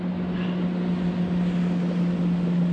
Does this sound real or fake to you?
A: real